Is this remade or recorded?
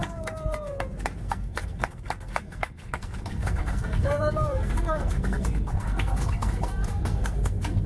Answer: remade